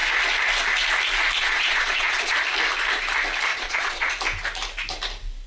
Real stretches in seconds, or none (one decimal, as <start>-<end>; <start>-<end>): 0.0-1.4; 2.3-3.5; 4.1-5.5